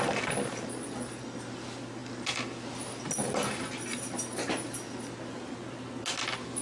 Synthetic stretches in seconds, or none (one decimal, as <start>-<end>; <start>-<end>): none